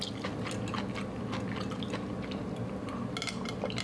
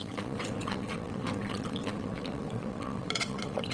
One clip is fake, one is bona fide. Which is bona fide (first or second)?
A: first